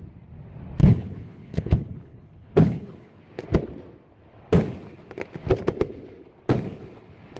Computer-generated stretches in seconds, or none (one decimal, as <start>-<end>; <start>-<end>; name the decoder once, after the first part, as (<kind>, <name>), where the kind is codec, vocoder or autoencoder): 0.8-3.2 (codec, HILCodec)